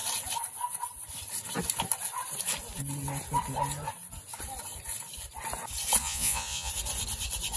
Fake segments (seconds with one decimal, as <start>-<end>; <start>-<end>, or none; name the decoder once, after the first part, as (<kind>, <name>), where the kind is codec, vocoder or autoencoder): 6.0-6.7 (vocoder, Vocos)

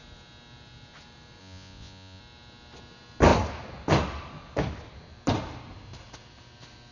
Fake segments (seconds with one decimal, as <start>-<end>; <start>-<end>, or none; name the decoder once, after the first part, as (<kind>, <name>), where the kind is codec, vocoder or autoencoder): 1.4-2.2 (vocoder, Vocos)

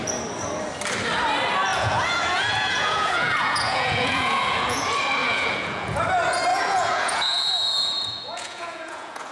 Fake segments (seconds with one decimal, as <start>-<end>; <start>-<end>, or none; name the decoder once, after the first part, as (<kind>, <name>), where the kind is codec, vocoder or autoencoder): 1.7-4.8 (vocoder, Vocos); 5.2-6.0; 6.5-9.3